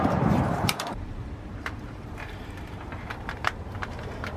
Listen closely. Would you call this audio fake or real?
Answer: fake